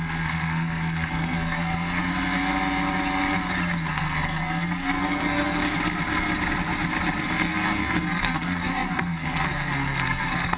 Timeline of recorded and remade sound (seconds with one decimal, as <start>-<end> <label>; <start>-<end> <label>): 0.0-2.0 remade; 2.0-3.9 recorded; 3.9-5.6 remade; 5.6-7.2 recorded; 7.2-10.6 remade